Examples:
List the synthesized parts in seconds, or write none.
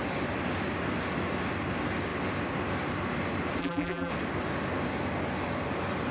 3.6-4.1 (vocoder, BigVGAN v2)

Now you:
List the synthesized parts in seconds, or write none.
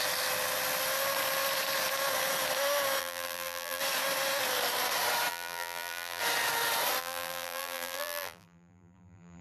3.0-3.8 (vocoder, BigVGAN v2); 5.3-6.2; 7.0-9.4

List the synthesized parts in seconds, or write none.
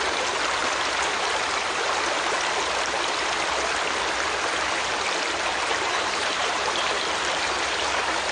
5.9-6.9 (vocoder, BigVGAN v2)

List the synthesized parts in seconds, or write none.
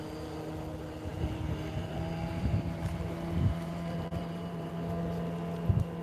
1.1-4.7 (vocoder, BigVGAN v2)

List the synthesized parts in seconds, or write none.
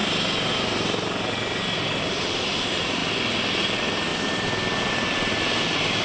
2.0-3.0 (vocoder, BigVGAN v2); 3.6-4.1; 4.9-6.0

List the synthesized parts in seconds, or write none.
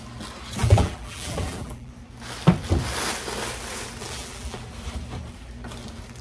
0.6-1.9 (vocoder, BigVGAN v2); 4.0-4.6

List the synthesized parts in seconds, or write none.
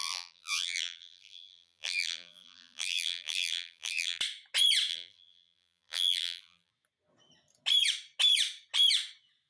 0.0-4.2 (vocoder, BigVGAN v2); 4.9-6.7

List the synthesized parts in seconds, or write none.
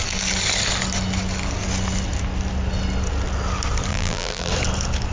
3.9-4.5 (vocoder, BigVGAN v2)